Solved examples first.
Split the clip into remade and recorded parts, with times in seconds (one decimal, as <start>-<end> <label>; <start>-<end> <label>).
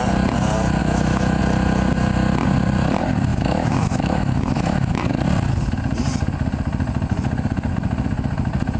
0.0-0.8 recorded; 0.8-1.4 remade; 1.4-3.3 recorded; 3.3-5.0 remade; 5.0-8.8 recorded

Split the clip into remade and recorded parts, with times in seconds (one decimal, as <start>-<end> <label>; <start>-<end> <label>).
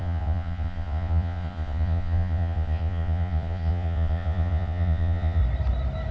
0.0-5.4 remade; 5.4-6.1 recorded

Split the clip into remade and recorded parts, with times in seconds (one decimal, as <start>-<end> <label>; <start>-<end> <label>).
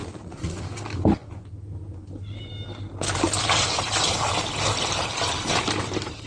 0.0-0.6 remade; 0.6-6.3 recorded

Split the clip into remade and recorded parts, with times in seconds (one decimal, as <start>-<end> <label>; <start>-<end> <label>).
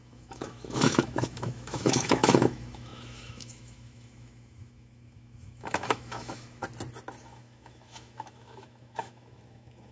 0.0-6.6 remade; 6.6-7.2 recorded; 7.2-9.9 remade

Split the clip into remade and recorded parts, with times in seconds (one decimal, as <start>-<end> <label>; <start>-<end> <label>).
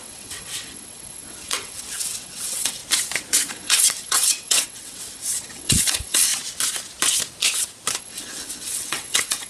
0.0-2.8 remade; 2.8-3.5 recorded; 3.5-6.3 remade; 6.3-8.0 recorded; 8.0-9.5 remade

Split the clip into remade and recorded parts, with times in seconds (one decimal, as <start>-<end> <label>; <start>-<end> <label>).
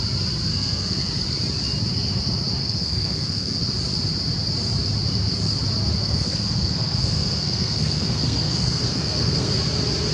0.0-0.5 recorded; 0.5-1.1 remade; 1.1-2.6 recorded; 2.6-3.6 remade; 3.6-6.0 recorded; 6.0-9.5 remade; 9.5-10.1 recorded